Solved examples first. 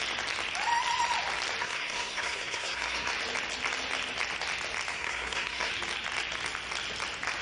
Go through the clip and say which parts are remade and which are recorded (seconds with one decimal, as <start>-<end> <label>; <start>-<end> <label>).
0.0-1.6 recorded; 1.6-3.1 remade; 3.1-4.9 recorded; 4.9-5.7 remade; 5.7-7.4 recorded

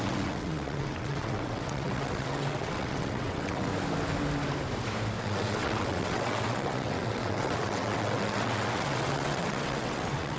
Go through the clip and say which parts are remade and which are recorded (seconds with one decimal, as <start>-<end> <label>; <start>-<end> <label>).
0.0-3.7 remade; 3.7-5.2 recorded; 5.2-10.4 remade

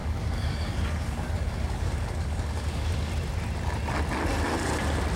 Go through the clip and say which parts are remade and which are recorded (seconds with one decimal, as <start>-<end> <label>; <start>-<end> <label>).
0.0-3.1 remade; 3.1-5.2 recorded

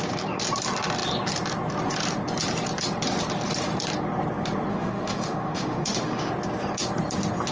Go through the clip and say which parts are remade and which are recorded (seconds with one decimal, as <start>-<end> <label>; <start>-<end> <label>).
0.0-4.7 recorded; 4.7-6.3 remade; 6.3-7.5 recorded

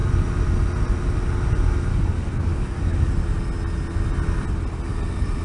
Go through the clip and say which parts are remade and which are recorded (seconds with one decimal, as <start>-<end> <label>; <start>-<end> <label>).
0.0-1.9 recorded; 1.9-3.1 remade; 3.1-5.4 recorded